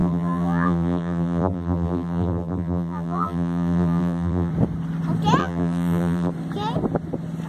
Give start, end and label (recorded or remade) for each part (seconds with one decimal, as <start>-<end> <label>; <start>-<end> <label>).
0.0-4.5 remade; 4.5-5.4 recorded; 5.4-6.3 remade; 6.3-7.5 recorded